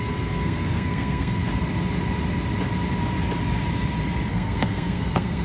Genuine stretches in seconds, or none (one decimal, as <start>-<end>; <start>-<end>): 1.4-4.3